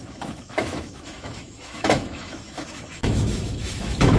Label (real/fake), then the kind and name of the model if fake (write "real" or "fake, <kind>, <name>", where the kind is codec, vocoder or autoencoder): fake, autoencoder, DAC-VAE